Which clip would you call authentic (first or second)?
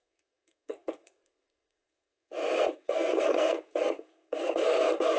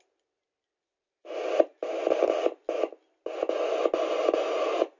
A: second